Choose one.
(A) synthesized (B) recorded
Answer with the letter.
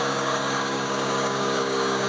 A